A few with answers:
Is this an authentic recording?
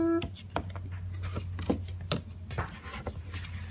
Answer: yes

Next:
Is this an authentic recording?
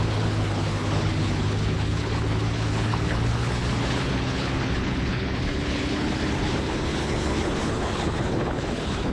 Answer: no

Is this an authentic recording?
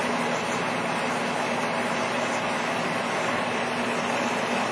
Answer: yes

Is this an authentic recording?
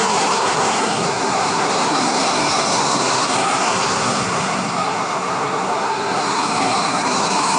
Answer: no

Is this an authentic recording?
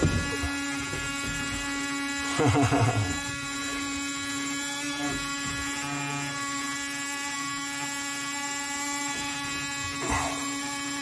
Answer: yes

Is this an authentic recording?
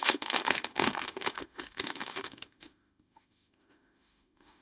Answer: no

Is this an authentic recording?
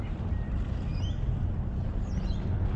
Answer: yes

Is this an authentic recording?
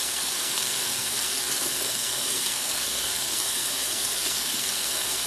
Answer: no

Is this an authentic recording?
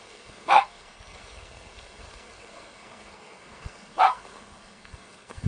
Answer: no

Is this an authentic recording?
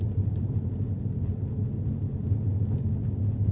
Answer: yes